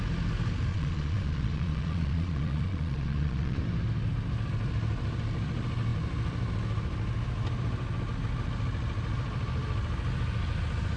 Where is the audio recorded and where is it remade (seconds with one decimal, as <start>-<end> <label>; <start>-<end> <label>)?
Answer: 0.0-0.7 recorded; 0.7-3.6 remade; 3.6-11.0 recorded